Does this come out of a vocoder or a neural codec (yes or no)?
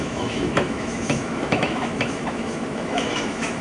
yes